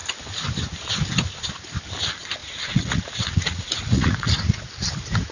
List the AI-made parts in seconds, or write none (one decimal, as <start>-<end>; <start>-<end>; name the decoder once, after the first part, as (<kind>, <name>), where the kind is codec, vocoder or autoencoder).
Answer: 2.4-4.6 (vocoder, Vocos)